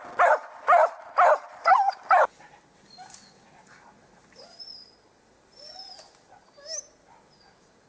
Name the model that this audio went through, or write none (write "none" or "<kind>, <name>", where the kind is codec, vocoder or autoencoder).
none